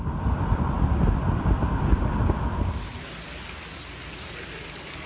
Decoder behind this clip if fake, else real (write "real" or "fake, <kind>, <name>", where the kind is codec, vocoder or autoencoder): real